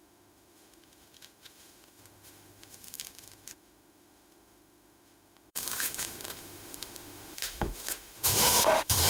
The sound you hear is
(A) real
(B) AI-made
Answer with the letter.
B